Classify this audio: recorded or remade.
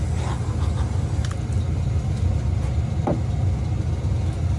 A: recorded